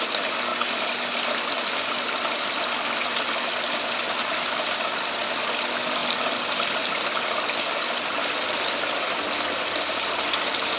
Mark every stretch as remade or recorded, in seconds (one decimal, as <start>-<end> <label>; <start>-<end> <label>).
0.0-10.8 recorded